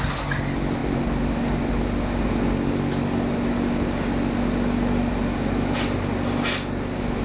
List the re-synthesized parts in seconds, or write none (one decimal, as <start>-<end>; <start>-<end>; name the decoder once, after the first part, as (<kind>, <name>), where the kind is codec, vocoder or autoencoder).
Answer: none